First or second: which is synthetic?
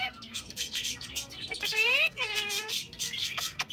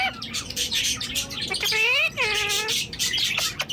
first